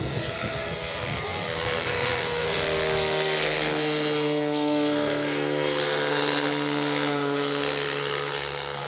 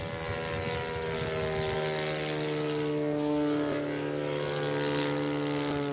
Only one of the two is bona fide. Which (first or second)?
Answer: second